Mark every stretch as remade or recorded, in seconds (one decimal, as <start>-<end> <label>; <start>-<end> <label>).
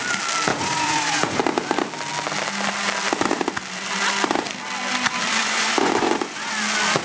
0.0-0.5 recorded; 0.5-1.4 remade; 1.4-5.4 recorded; 5.4-6.5 remade; 6.5-7.0 recorded